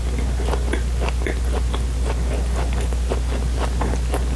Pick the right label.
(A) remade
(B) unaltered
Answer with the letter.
B